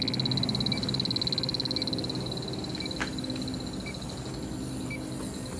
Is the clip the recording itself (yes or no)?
yes